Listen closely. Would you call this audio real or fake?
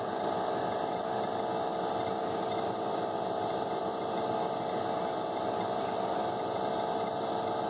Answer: real